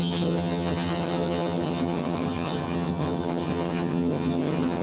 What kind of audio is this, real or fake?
fake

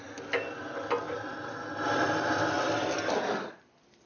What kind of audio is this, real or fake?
real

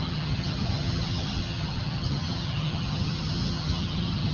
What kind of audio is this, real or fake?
fake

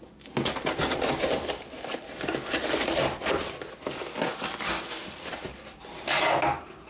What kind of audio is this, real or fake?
real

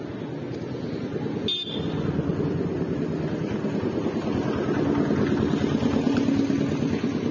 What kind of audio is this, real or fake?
real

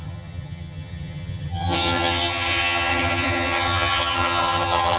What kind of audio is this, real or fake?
fake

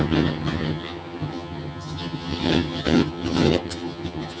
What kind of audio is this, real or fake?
fake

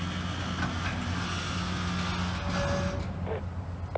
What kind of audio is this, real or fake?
real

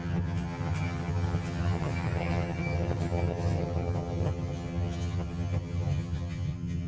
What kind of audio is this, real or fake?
fake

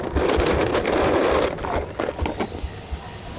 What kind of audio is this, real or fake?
real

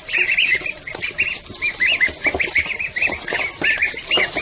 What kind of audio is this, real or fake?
real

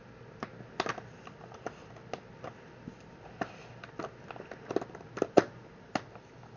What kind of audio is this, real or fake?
real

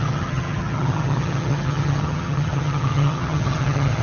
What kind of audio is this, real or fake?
fake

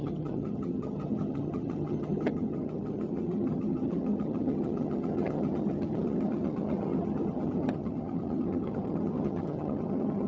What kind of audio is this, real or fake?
fake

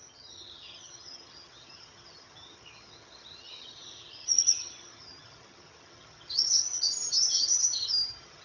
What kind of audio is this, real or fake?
fake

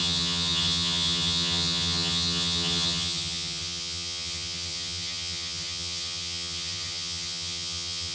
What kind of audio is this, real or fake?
fake